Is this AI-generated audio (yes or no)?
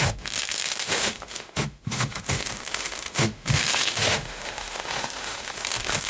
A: yes